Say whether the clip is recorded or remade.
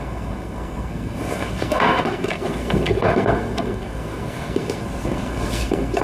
remade